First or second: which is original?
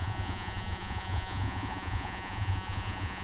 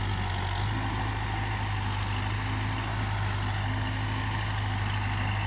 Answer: second